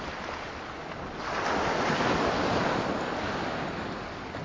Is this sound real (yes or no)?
yes